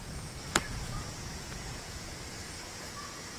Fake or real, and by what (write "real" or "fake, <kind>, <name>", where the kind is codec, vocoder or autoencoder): fake, vocoder, Vocos